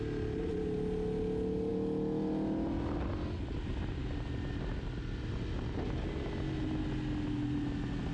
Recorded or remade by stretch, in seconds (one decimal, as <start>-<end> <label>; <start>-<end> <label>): 0.0-8.1 recorded